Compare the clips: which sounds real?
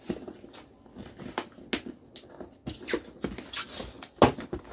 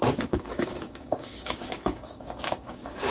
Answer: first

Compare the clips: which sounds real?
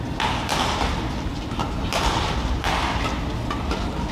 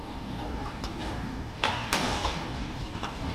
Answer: first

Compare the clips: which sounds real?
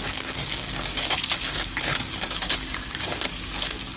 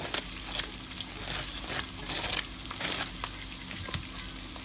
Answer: second